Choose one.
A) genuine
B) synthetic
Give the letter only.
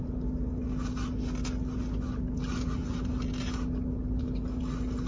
A